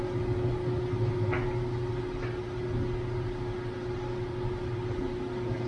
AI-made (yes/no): no